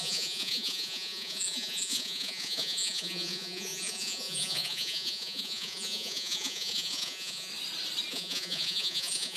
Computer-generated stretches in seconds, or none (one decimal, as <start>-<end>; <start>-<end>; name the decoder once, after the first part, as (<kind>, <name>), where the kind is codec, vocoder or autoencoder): 0.0-7.5 (vocoder, Vocos); 8.1-9.4